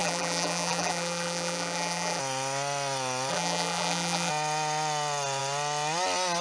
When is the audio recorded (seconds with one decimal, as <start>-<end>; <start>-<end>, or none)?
2.2-3.3; 4.3-6.4